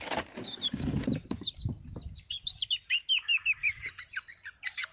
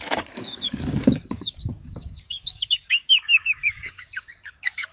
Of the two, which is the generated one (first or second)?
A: second